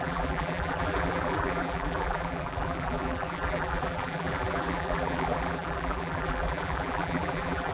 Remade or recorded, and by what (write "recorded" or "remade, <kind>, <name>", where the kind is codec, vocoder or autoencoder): remade, vocoder, BigVGAN v2